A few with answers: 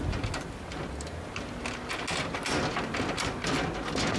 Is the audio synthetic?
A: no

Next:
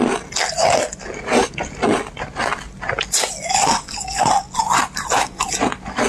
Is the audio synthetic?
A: no